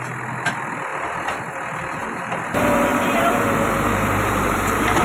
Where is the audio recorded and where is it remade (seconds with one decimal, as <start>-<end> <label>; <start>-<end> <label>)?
0.0-2.0 recorded; 2.0-5.0 remade